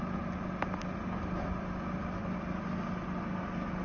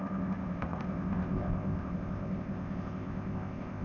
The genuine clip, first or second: first